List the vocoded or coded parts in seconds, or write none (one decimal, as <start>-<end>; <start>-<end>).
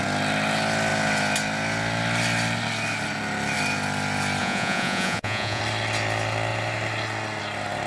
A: 4.4-5.6